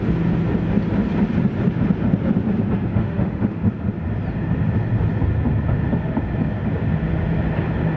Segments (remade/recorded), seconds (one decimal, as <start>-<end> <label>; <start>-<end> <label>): 0.0-2.9 recorded; 2.9-3.7 remade; 3.7-8.0 recorded